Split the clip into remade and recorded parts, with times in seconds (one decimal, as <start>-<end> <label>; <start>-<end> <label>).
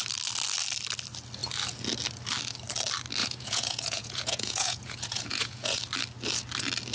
0.0-3.2 recorded; 3.2-5.8 remade; 5.8-6.9 recorded